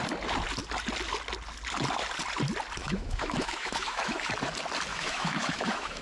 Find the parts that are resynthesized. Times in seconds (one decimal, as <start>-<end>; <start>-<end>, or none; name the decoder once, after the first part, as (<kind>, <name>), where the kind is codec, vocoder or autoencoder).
2.8-4.3 (autoencoder, DAC-VAE); 4.9-6.0